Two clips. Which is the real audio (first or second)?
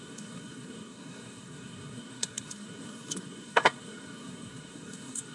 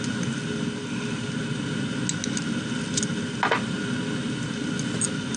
second